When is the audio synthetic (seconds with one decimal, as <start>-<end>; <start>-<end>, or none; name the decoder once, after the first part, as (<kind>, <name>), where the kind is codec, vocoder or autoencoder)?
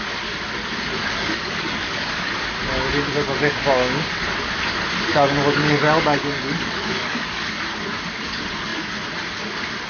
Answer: 1.0-2.3 (codec, DAC); 5.1-7.6